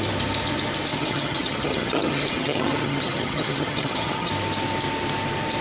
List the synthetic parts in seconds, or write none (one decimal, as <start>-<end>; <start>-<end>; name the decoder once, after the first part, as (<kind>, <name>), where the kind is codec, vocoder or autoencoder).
0.9-4.3 (vocoder, HiFi-GAN)